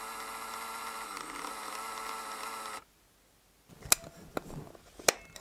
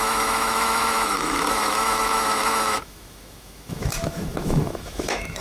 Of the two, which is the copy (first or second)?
second